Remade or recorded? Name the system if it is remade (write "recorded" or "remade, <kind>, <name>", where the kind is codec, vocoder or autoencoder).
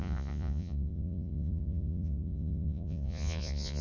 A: remade, vocoder, Vocos